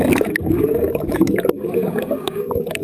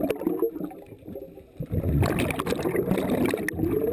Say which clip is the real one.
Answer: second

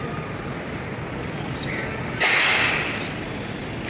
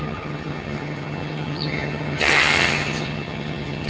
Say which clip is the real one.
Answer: first